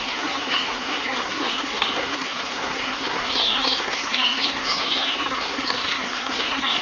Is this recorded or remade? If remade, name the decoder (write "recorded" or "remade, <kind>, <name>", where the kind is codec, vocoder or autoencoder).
remade, codec, SNAC